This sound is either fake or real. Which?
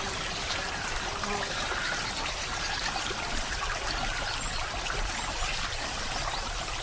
real